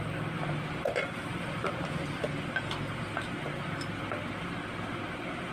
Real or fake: real